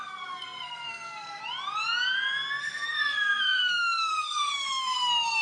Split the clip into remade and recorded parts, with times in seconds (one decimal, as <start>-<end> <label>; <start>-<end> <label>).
0.0-1.4 remade; 1.4-2.6 recorded; 2.6-5.4 remade